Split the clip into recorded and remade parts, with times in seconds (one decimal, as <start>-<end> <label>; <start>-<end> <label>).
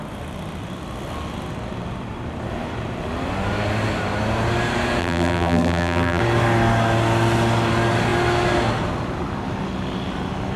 0.0-5.0 recorded; 5.0-6.2 remade; 6.2-10.6 recorded